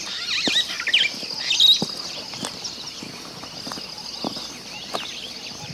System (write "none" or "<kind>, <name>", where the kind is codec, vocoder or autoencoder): none